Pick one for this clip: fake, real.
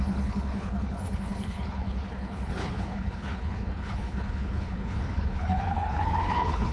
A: fake